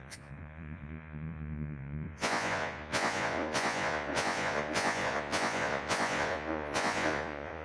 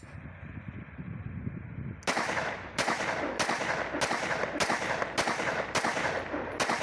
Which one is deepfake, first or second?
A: first